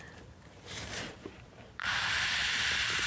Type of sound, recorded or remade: remade